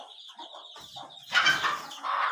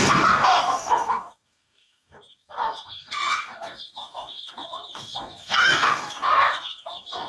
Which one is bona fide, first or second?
first